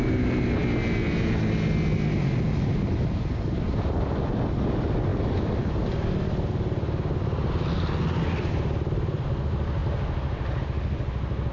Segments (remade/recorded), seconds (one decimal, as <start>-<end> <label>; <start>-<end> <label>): 0.0-11.5 recorded